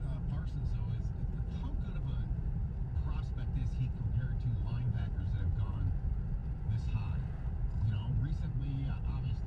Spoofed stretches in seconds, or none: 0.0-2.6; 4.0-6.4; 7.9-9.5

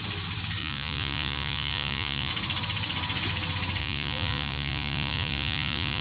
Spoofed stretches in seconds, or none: 0.6-2.3; 3.8-6.0

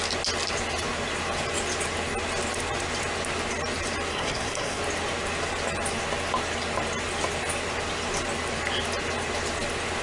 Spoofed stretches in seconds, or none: 4.1-4.8

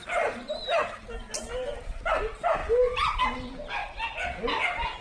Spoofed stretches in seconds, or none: 0.6-2.0

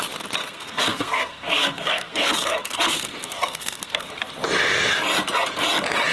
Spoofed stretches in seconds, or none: 0.4-4.1